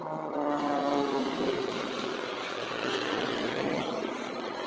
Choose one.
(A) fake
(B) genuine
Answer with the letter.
A